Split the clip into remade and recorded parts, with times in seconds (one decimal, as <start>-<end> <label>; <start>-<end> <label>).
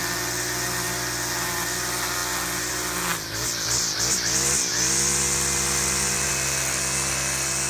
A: 0.0-7.7 recorded